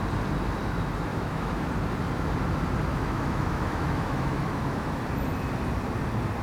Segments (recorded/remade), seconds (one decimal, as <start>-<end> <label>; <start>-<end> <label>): 0.0-1.1 recorded; 1.1-1.7 remade; 1.7-2.9 recorded; 2.9-5.0 remade; 5.0-6.4 recorded